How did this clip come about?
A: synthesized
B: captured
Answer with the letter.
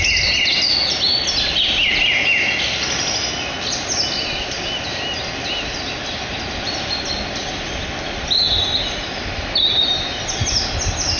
B